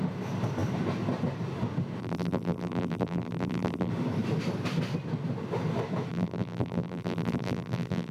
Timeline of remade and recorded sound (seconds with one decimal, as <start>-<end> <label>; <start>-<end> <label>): 0.0-2.0 recorded; 2.0-3.9 remade; 3.9-6.1 recorded; 6.1-8.1 remade